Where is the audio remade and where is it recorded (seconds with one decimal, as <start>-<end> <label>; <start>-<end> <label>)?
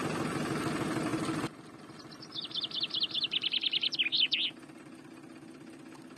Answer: 0.0-6.2 recorded